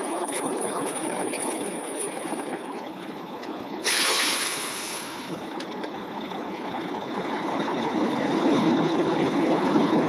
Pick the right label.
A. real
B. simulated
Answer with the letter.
B